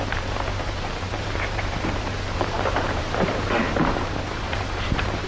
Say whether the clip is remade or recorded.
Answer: remade